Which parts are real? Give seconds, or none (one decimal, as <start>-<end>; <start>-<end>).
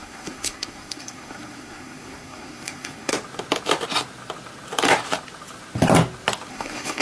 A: 3.1-6.5